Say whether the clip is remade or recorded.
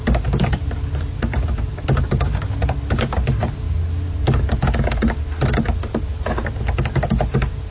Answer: recorded